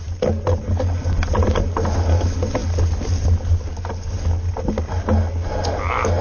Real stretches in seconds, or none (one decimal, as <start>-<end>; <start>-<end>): 0.0-6.2

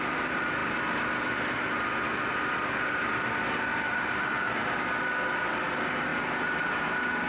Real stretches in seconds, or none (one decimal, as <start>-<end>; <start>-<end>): 0.0-3.7; 4.3-7.3

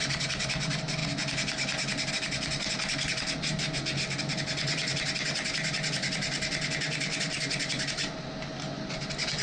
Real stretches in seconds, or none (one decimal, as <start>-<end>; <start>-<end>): 0.0-9.4

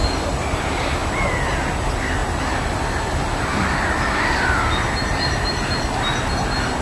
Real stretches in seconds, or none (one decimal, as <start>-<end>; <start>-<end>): 0.0-6.8